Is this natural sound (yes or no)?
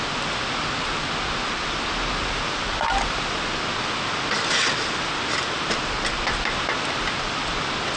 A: yes